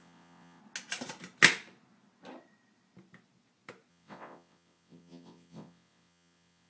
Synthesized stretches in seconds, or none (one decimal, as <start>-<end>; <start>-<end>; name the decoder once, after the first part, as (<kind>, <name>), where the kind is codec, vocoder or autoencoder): 0.0-0.6 (vocoder, WaveNeXt); 3.9-6.7